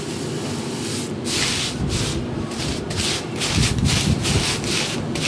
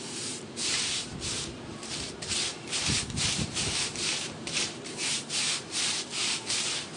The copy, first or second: second